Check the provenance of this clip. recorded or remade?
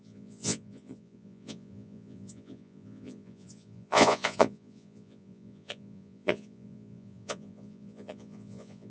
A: remade